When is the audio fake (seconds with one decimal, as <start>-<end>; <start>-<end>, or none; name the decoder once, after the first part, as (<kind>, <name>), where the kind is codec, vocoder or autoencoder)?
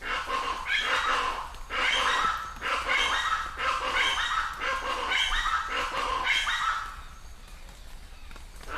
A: none